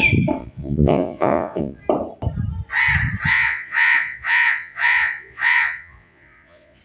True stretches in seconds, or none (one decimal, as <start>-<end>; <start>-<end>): 0.0-0.4; 1.8-3.3